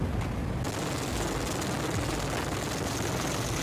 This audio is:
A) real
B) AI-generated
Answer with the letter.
A